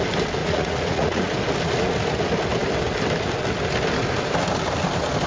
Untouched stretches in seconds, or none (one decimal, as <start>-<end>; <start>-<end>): 0.0-0.4; 1.3-5.3